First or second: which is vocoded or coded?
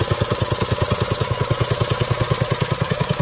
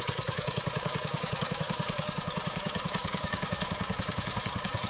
second